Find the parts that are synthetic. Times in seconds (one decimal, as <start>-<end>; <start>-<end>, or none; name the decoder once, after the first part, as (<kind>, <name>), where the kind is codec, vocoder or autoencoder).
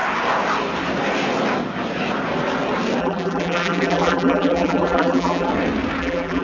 3.0-5.5 (vocoder, BigVGAN v2); 6.0-6.4